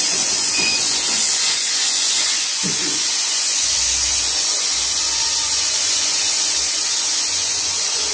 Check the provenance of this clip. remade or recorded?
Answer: remade